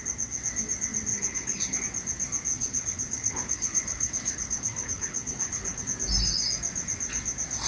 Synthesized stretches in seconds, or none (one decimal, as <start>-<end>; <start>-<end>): 1.1-1.8; 2.5-5.8